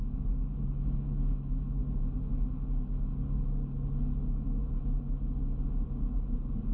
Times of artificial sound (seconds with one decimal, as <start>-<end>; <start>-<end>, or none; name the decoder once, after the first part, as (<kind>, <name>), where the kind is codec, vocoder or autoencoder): none